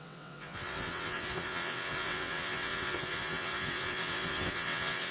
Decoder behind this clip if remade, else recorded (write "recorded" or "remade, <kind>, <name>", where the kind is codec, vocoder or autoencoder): remade, vocoder, WaveNeXt